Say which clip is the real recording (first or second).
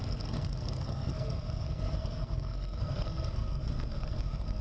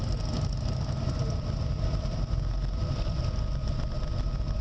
second